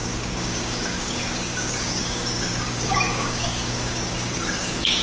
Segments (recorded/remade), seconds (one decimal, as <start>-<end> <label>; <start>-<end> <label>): 0.0-5.0 remade